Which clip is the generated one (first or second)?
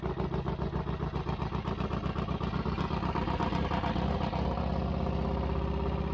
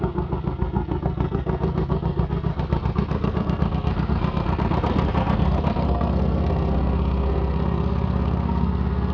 second